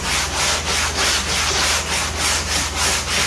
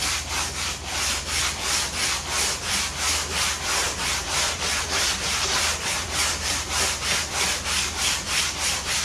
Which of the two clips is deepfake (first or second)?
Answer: second